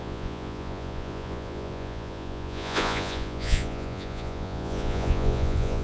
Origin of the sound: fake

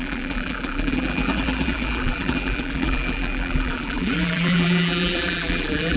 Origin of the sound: fake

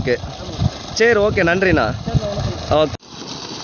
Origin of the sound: real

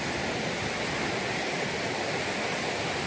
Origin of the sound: real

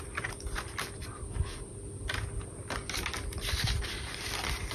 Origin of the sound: real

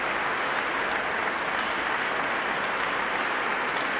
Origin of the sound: real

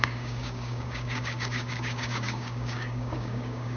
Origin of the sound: fake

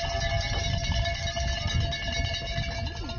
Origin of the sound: real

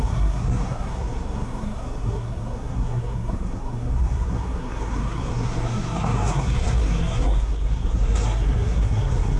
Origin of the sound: fake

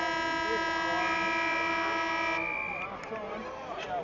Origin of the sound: real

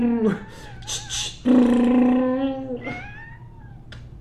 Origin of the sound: real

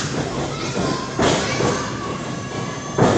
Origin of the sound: real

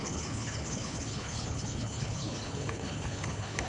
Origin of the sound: fake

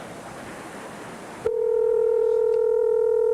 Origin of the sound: fake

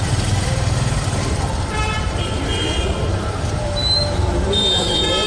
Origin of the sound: fake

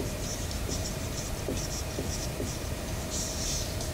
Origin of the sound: fake